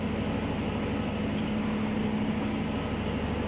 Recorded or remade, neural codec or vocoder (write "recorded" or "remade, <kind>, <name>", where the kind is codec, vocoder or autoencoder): recorded